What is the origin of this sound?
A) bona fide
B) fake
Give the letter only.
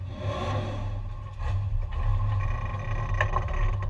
A